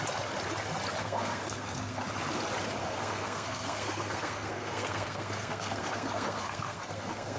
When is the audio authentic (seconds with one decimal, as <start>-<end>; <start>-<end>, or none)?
0.0-1.0; 2.0-2.8